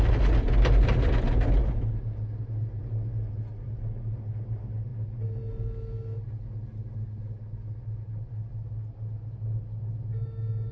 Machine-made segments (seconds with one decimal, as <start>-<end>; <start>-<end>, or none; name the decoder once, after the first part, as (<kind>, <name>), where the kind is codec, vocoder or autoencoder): none